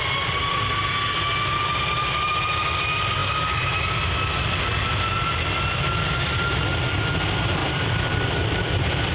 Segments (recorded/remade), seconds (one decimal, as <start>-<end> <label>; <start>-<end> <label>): 0.0-7.6 recorded; 7.6-9.1 remade